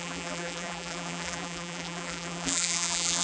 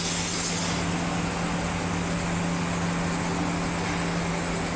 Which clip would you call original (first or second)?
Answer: second